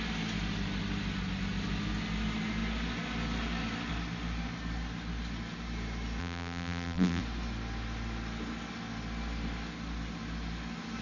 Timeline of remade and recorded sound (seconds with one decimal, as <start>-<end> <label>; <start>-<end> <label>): 0.0-6.2 recorded; 6.2-7.2 remade; 7.2-11.0 recorded